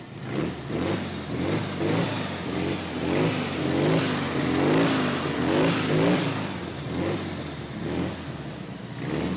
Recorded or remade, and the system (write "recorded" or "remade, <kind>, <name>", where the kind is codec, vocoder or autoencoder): recorded